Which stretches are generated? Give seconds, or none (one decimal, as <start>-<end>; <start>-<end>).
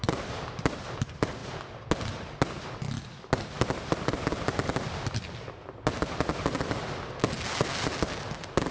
none